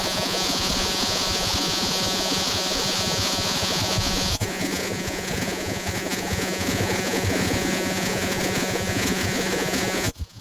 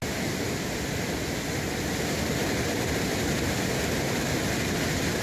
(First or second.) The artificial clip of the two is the first